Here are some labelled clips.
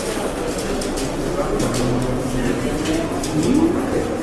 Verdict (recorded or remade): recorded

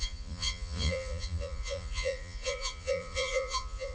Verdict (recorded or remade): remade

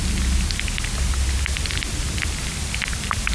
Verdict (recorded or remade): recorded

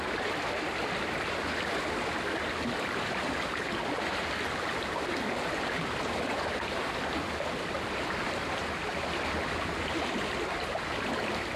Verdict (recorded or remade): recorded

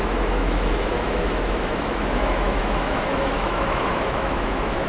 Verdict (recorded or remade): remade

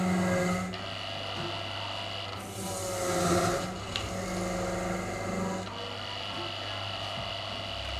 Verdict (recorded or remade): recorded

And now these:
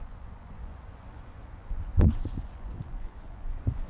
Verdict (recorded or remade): remade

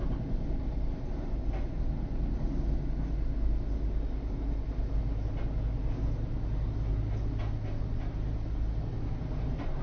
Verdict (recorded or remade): recorded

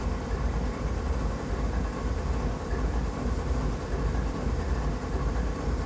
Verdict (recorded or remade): recorded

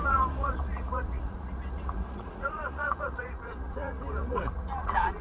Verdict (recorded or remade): remade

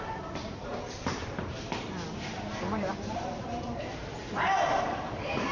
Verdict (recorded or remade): remade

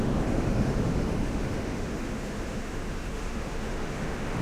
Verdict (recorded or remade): remade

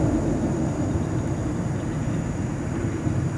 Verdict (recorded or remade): remade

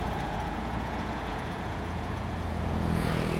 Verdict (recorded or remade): remade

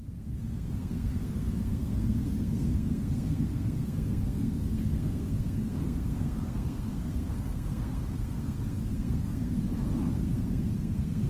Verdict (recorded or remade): remade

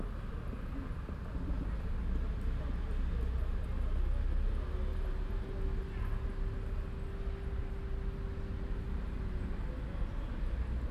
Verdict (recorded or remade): recorded